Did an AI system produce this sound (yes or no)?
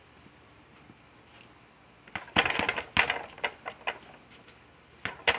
no